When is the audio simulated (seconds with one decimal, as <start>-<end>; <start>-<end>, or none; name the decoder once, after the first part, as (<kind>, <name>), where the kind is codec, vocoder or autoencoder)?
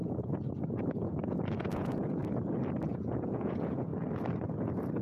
0.0-2.2 (vocoder, Vocos); 2.9-3.9